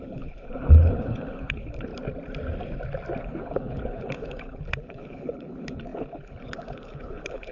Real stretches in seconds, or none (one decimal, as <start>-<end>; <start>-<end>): 1.9-3.2